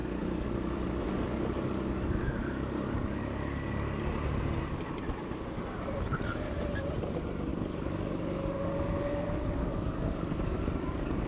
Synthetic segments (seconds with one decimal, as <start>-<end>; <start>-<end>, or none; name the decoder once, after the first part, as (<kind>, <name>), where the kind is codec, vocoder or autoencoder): 0.0-4.1 (codec, DAC); 7.5-11.3